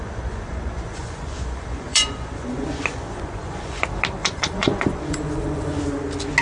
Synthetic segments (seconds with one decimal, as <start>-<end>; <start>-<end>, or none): 0.0-3.8; 4.2-5.8